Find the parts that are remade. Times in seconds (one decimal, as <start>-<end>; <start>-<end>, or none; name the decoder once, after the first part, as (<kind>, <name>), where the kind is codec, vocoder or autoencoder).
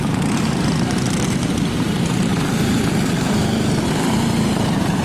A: 0.0-2.3 (vocoder, BigVGAN v2); 4.1-5.0